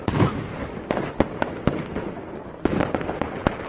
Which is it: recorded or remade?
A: recorded